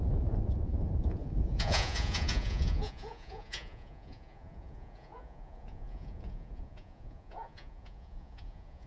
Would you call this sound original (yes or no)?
no